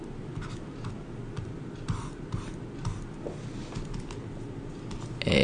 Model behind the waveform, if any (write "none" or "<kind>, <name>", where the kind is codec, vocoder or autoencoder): none